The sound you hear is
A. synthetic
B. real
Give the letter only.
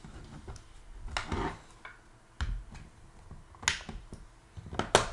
B